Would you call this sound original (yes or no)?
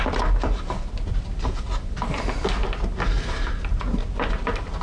yes